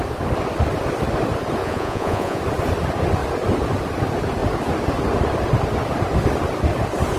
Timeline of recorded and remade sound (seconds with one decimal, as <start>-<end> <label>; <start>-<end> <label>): 0.0-1.6 recorded; 1.6-2.4 remade; 2.4-7.2 recorded